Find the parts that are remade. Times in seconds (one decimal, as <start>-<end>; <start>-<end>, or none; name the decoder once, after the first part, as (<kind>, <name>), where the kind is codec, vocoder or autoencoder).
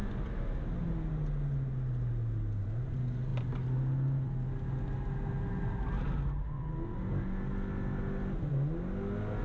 none